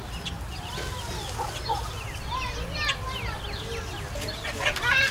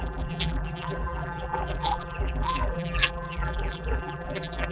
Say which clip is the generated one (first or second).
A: second